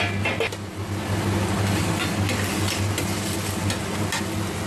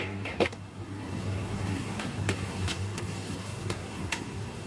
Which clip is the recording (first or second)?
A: first